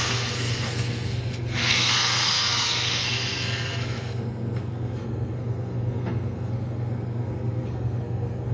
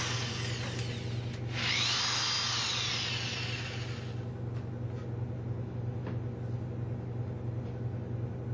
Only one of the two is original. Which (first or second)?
second